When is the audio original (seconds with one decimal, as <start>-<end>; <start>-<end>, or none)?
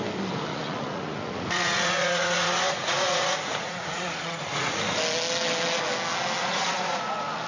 0.0-0.5; 5.0-6.4; 7.0-7.5